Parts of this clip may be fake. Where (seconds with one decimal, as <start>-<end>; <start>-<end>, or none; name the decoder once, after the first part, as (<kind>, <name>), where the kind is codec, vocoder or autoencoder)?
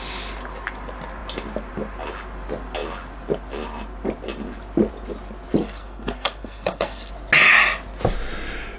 5.6-7.1 (codec, SNAC)